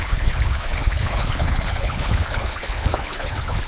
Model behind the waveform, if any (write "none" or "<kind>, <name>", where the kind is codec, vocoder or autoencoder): codec, HILCodec